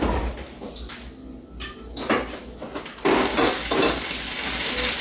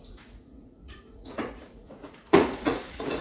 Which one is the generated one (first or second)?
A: second